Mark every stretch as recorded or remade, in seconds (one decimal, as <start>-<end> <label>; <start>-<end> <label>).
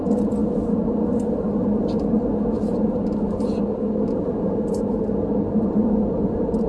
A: 0.0-6.7 recorded